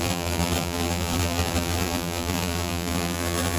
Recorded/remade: remade